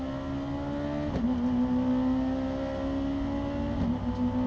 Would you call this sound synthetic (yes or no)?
no